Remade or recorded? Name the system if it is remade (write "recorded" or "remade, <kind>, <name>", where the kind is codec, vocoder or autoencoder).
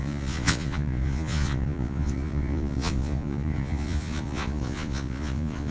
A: remade, vocoder, Vocos